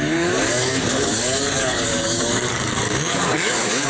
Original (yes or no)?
no